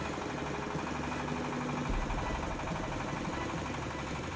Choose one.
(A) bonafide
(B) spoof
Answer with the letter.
A